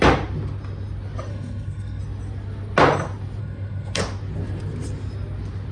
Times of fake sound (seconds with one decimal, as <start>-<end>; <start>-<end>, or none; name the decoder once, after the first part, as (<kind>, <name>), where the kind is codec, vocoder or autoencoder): 1.3-2.0 (codec, SNAC); 3.4-4.0